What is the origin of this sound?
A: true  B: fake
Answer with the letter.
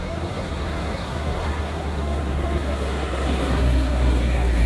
B